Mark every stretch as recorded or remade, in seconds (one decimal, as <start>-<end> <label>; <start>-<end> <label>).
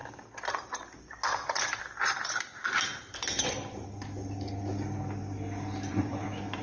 0.0-6.6 recorded